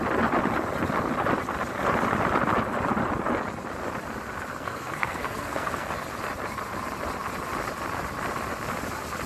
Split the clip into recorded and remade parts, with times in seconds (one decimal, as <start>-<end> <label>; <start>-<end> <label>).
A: 0.0-4.5 recorded; 4.5-5.9 remade; 5.9-9.3 recorded